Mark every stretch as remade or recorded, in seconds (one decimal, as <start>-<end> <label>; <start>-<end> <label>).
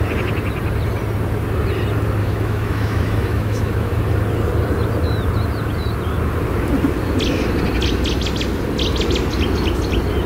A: 0.0-2.2 recorded; 2.2-4.0 remade; 4.0-10.3 recorded